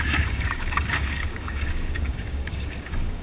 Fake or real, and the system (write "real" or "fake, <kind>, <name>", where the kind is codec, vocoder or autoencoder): fake, codec, DAC